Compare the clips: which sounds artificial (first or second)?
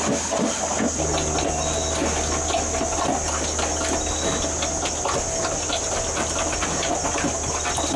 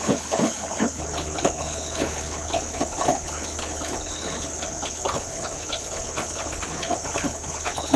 second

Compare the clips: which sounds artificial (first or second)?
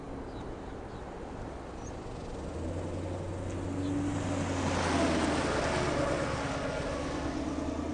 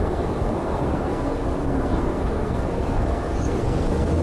second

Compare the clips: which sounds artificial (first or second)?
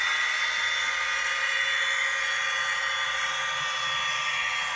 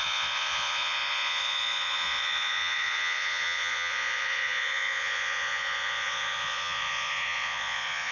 second